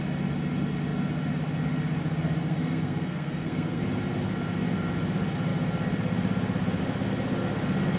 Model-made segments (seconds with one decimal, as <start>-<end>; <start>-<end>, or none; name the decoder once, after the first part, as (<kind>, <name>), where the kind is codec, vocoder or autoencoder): 2.4-3.8 (codec, SNAC)